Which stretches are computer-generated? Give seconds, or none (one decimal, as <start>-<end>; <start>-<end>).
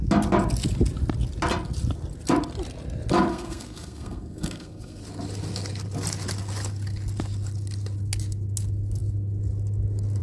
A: 3.3-5.0